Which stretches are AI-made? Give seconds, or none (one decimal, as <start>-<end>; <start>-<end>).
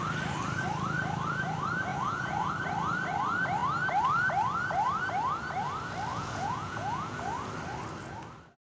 1.9-2.5; 6.1-7.2